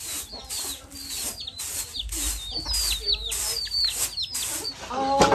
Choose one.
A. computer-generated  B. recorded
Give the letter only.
B